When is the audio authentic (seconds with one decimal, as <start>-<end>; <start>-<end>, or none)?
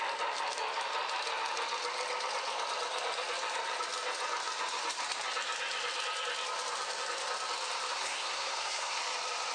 0.0-7.9; 9.0-9.5